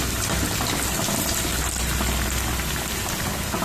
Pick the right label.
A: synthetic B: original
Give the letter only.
B